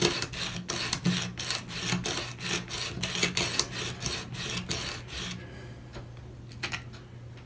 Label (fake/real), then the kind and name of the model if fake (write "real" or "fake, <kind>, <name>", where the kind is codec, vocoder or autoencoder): real